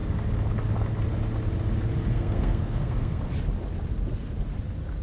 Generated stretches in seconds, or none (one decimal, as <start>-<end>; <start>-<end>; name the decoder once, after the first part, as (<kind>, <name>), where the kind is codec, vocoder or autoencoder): 2.1-3.2 (codec, SNAC)